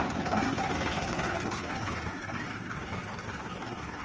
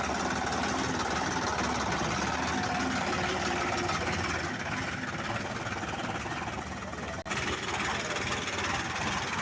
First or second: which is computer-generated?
first